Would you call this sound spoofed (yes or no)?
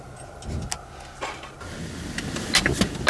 no